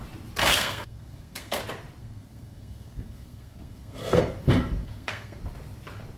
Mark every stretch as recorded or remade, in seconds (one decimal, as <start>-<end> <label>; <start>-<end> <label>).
0.0-0.4 recorded; 0.4-1.6 remade; 1.6-2.0 recorded; 2.0-4.2 remade; 4.2-4.8 recorded; 4.8-5.4 remade; 5.4-6.2 recorded